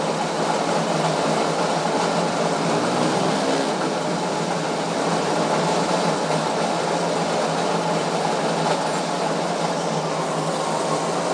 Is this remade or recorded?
recorded